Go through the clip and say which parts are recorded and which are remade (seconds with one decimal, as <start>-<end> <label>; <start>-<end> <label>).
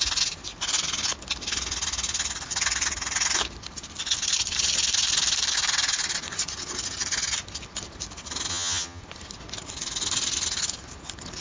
0.0-8.5 recorded; 8.5-9.0 remade; 9.0-11.4 recorded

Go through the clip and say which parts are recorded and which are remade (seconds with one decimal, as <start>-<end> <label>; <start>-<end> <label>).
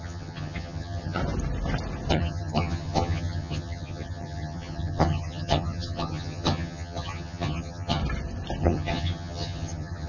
0.0-1.2 remade; 1.2-2.1 recorded; 2.1-8.0 remade; 8.0-8.6 recorded; 8.6-10.1 remade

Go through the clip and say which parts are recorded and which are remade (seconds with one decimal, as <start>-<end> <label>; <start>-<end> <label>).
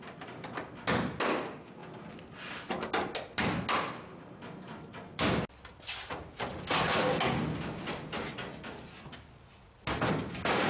0.0-10.7 recorded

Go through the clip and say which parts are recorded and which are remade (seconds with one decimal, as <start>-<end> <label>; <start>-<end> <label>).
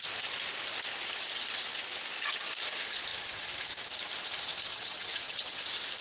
0.0-4.7 recorded; 4.7-5.6 remade; 5.6-6.0 recorded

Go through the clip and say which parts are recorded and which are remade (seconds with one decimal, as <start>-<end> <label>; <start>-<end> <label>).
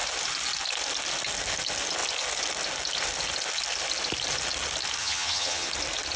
0.0-5.0 recorded; 5.0-5.7 remade; 5.7-6.2 recorded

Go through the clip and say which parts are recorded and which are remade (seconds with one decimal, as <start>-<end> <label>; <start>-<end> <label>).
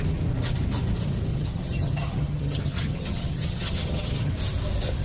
0.0-1.3 recorded; 1.3-4.3 remade; 4.3-5.0 recorded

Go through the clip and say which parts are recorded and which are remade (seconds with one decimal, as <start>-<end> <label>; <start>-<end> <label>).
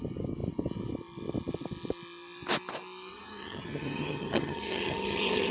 0.0-3.1 recorded; 3.1-5.5 remade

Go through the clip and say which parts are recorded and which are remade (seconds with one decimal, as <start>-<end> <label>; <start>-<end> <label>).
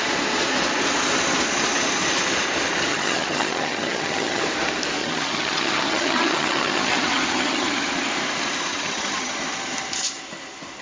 0.0-2.9 recorded; 2.9-4.4 remade; 4.4-5.0 recorded; 5.0-7.9 remade; 7.9-8.7 recorded; 8.7-9.3 remade; 9.3-10.8 recorded